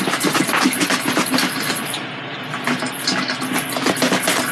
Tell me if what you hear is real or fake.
real